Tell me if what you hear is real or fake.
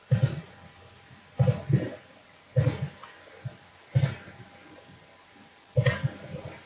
real